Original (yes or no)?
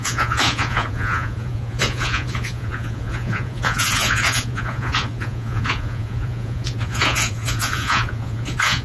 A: no